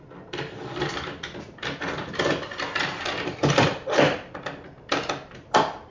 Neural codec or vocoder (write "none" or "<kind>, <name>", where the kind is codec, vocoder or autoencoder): vocoder, BigVGAN v2